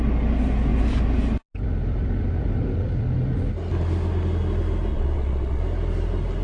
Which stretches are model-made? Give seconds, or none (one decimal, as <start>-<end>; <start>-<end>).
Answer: 4.9-5.6